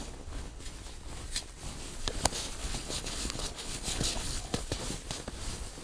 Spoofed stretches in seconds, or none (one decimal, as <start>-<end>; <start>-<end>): 0.0-0.6; 2.6-4.5

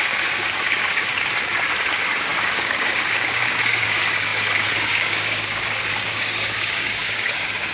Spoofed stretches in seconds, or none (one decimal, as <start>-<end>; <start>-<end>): 0.0-1.1; 1.9-7.7

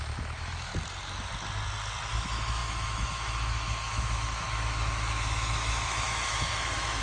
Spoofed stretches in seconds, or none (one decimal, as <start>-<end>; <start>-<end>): 0.0-0.7; 2.1-7.0

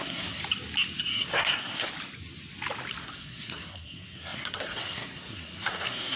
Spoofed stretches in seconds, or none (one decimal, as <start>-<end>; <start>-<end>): 0.0-0.4; 1.0-1.9; 3.0-6.2